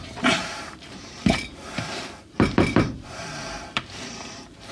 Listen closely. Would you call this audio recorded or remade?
remade